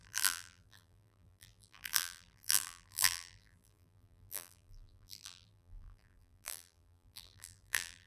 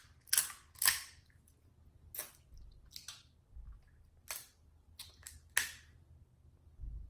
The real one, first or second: second